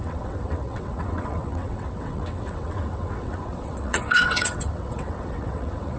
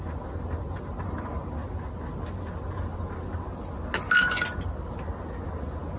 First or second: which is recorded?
second